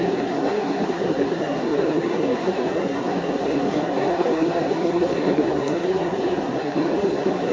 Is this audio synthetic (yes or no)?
yes